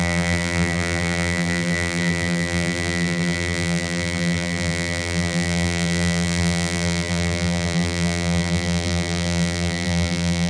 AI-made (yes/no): yes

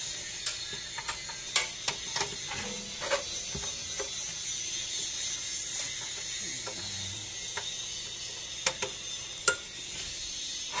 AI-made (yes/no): no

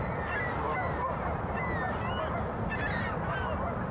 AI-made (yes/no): no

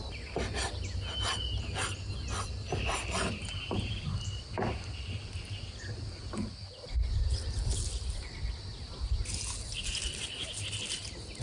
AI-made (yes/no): no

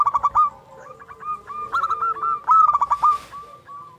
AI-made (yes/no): no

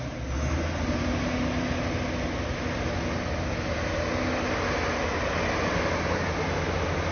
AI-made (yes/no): no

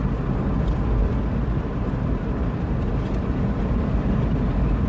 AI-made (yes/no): no